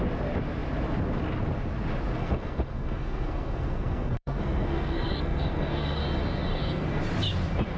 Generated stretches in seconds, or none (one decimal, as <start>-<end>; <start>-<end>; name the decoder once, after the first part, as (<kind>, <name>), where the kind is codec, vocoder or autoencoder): 2.2-6.0 (codec, SNAC); 6.5-7.0